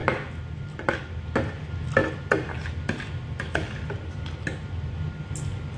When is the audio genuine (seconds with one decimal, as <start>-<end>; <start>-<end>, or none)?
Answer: 0.0-5.8